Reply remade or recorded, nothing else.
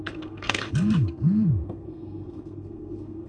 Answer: remade